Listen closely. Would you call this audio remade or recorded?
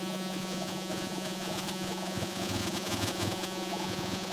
remade